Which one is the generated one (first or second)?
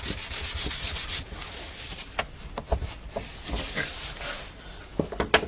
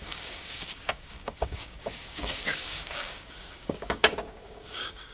second